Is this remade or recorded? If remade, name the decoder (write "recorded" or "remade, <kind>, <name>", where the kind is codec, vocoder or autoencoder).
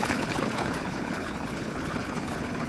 remade, codec, HILCodec